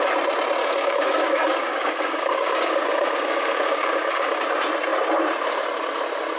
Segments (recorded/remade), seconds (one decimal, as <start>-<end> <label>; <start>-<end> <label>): 0.0-0.6 recorded; 0.6-4.4 remade; 4.4-6.4 recorded